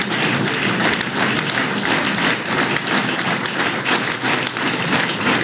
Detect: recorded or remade recorded